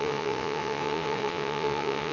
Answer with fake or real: fake